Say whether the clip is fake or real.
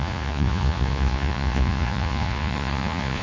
fake